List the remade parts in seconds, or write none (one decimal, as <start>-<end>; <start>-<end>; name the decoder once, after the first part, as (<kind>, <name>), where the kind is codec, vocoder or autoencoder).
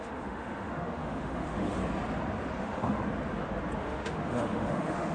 0.0-1.8 (autoencoder, DAC-VAE); 2.6-3.0; 3.8-5.1